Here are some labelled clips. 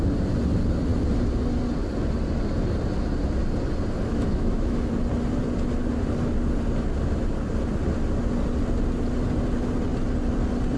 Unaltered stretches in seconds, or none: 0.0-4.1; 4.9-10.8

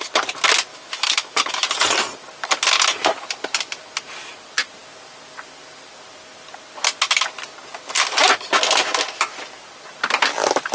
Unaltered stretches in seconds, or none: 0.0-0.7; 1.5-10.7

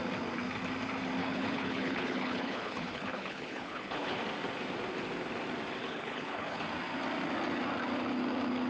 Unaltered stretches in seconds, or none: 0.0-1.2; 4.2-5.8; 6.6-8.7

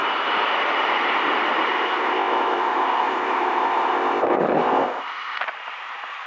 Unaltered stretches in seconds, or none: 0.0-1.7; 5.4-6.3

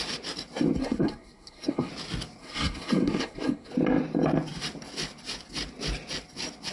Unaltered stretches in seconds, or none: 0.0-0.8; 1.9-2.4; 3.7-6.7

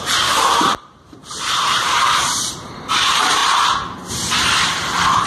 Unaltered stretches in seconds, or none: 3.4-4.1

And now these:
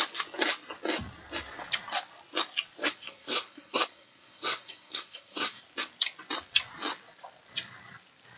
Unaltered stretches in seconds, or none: 0.0-2.8; 5.6-8.4

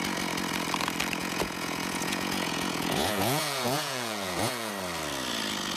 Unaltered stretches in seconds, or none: 0.0-1.2; 4.7-5.8